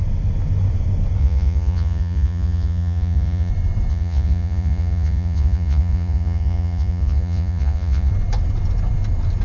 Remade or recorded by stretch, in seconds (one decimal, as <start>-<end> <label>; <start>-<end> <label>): 0.0-1.2 recorded; 1.2-3.5 remade; 3.5-3.9 recorded; 3.9-8.1 remade; 8.1-9.4 recorded